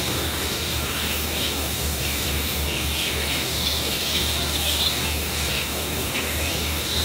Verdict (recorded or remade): remade